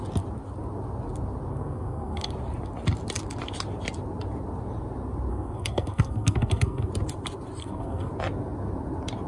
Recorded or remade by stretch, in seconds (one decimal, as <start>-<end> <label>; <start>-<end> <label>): 0.0-1.5 recorded; 1.5-2.3 remade; 2.3-5.3 recorded; 5.3-6.9 remade; 6.9-7.6 recorded; 7.6-8.1 remade; 8.1-9.3 recorded